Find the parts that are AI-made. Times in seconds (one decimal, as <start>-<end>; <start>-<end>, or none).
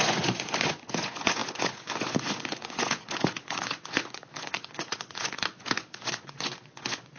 0.0-7.2